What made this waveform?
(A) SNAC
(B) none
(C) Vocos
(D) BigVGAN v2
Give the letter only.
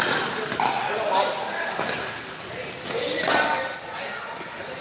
B